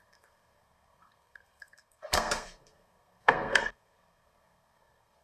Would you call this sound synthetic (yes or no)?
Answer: yes